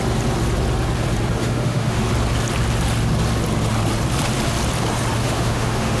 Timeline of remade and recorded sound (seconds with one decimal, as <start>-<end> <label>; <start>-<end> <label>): 0.0-1.4 recorded; 1.4-2.1 remade; 2.1-5.2 recorded; 5.2-6.0 remade